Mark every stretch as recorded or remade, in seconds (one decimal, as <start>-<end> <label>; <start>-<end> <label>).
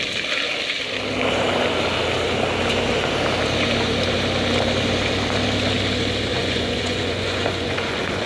0.0-6.3 recorded; 6.3-8.3 remade